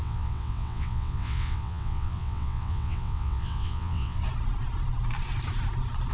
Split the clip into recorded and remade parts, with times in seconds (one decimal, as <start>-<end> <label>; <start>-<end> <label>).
0.0-4.2 remade; 4.2-6.1 recorded